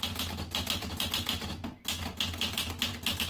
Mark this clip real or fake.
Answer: real